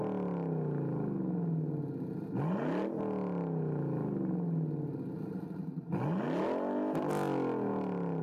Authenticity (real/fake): real